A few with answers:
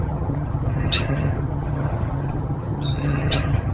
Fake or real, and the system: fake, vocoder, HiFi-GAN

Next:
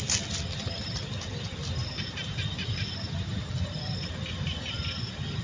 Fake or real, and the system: real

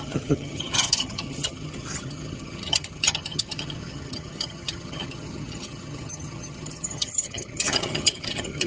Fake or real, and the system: fake, vocoder, HiFi-GAN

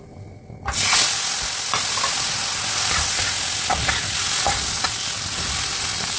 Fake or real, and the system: real